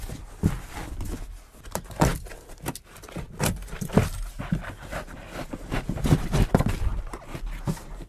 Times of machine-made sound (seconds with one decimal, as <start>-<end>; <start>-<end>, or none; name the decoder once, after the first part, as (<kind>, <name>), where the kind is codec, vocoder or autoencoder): none